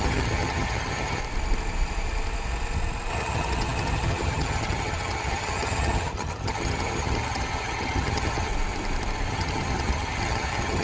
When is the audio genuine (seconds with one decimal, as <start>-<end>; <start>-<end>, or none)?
1.2-3.1; 8.5-9.3